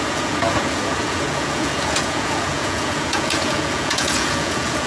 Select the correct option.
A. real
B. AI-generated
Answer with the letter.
B